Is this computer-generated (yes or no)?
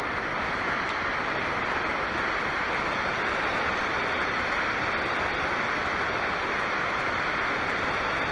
no